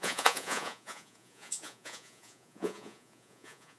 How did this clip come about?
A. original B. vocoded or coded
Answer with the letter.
B